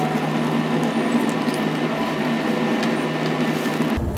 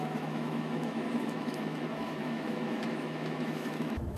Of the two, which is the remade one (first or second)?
second